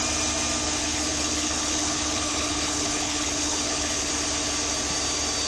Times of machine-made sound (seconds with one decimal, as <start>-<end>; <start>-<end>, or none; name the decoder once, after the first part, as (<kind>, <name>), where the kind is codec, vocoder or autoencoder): 0.8-4.1 (codec, HILCodec)